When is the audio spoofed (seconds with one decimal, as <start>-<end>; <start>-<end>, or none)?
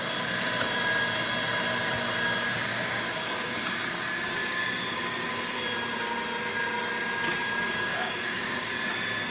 2.7-5.4; 7.4-8.9